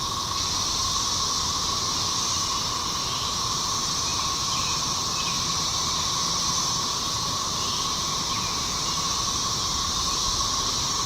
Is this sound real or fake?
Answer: fake